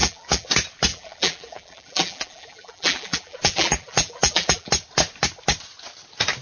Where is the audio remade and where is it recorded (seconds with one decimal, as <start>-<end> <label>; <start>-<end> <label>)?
0.0-0.5 remade; 0.5-0.9 recorded; 0.9-4.7 remade; 4.7-6.4 recorded